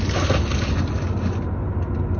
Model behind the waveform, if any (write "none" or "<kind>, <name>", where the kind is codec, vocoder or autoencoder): none